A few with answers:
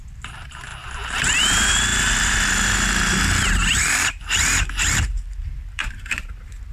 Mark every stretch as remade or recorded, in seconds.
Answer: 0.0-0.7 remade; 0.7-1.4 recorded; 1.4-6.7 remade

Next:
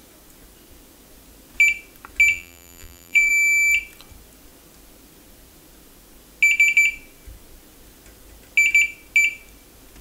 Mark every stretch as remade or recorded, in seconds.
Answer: 0.0-2.3 recorded; 2.3-3.3 remade; 3.3-10.0 recorded

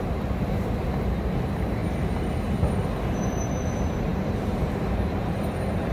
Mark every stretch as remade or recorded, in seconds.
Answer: 0.0-1.8 remade; 1.8-3.2 recorded; 3.2-5.9 remade

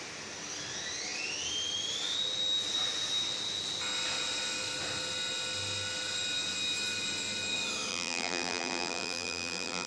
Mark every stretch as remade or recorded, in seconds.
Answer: 0.0-7.9 recorded; 7.9-9.9 remade

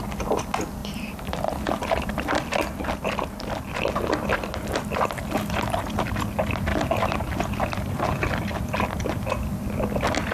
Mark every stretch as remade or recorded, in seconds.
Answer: 0.0-0.8 recorded; 0.8-1.7 remade; 1.7-6.7 recorded; 6.7-8.1 remade; 8.1-10.3 recorded